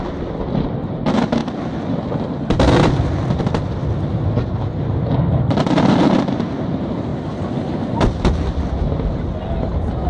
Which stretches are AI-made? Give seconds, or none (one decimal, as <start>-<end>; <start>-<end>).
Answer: none